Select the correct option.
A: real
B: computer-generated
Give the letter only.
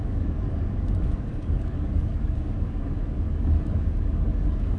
B